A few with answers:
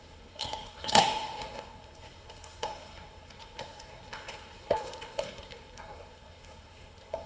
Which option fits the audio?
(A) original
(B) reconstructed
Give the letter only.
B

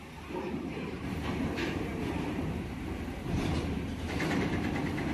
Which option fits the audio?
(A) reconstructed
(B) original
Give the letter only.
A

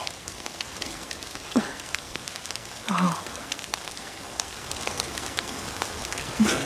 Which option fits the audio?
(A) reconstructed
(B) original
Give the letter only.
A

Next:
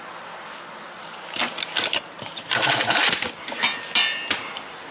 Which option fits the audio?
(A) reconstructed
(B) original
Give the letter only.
B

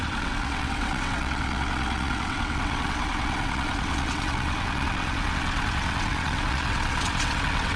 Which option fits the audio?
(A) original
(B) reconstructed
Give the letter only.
B